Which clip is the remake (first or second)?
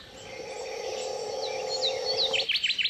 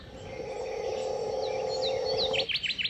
first